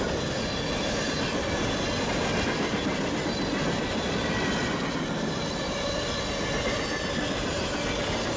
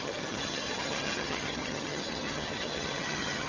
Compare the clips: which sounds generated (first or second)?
second